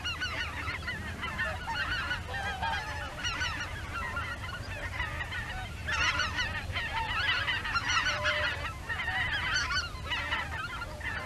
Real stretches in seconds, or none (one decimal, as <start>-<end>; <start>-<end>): 0.0-3.1; 3.9-11.3